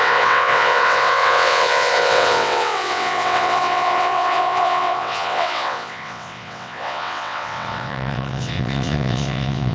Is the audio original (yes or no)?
no